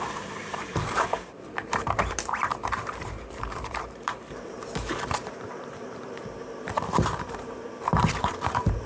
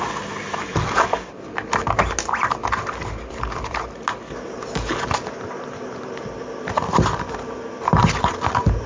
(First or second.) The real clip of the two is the second